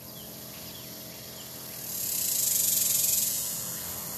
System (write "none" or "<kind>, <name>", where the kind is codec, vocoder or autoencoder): none